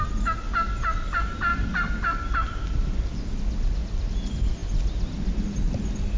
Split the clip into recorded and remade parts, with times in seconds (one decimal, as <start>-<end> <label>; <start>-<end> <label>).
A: 0.0-6.2 recorded